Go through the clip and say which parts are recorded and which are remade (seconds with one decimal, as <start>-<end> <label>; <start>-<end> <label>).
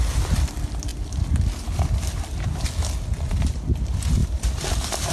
0.0-0.9 recorded; 0.9-2.7 remade; 2.7-4.2 recorded; 4.2-5.1 remade